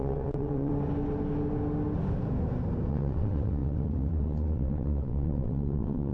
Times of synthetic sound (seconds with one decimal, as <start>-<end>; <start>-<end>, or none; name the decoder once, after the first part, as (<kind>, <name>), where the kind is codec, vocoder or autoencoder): 0.0-0.7 (vocoder, WaveNeXt); 2.9-6.1